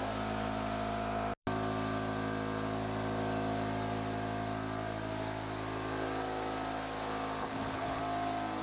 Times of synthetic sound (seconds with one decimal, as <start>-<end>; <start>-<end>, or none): 7.4-8.0

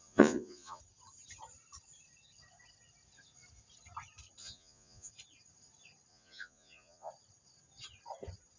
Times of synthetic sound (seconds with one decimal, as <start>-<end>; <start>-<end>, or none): 0.0-0.8; 4.4-5.1; 6.1-7.1